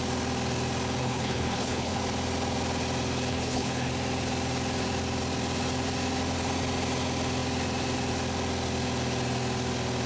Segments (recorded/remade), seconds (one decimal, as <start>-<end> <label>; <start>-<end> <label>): 0.0-1.0 recorded; 1.0-2.0 remade; 2.0-3.3 recorded; 3.3-3.9 remade; 3.9-10.1 recorded